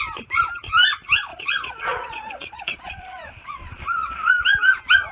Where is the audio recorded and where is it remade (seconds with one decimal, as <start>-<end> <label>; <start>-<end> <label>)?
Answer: 0.0-1.3 recorded; 1.3-4.3 remade; 4.3-5.1 recorded